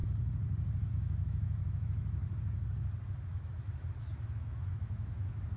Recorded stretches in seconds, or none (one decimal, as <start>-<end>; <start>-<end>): 0.0-0.9; 2.2-3.3